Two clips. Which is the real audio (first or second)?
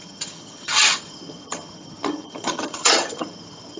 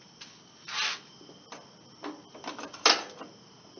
second